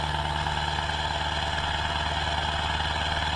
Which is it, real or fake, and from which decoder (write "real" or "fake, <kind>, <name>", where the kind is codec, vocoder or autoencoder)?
real